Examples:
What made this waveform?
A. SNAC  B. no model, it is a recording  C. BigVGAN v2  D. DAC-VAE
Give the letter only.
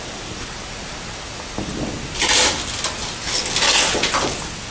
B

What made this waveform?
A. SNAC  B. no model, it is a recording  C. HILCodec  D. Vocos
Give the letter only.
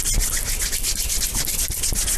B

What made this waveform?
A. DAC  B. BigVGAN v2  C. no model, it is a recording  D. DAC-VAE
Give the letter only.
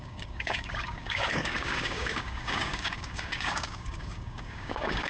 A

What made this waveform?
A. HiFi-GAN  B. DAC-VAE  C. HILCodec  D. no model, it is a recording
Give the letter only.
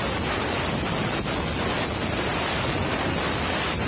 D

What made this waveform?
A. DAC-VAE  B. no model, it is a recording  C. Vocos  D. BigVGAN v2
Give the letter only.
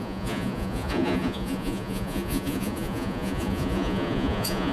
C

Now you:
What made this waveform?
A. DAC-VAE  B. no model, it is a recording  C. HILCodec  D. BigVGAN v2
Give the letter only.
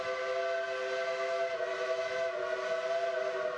B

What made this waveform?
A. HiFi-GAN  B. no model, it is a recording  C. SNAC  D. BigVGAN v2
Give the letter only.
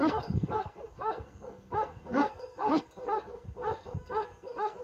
C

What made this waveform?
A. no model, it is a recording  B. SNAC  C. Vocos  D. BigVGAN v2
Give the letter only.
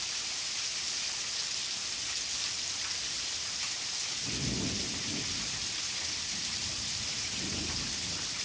A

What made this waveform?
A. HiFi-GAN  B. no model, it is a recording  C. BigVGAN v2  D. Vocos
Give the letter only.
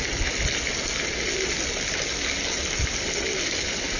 B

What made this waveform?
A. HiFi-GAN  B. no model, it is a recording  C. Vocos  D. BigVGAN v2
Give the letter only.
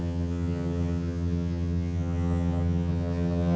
A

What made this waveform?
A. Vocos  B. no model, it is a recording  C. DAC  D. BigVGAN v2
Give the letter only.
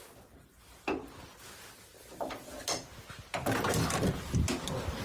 B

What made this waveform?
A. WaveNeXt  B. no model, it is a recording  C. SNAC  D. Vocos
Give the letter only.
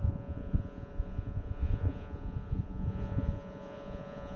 D